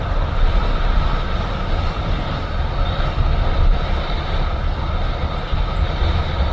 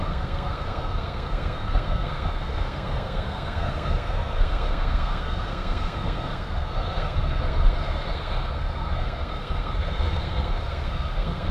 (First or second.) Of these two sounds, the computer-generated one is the second